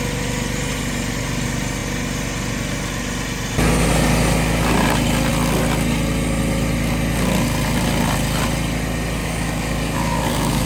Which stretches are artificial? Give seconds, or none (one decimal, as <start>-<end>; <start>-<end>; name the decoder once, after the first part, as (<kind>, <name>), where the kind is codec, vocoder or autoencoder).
9.2-10.7 (codec, DAC)